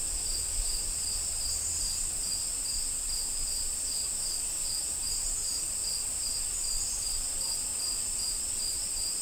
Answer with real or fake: real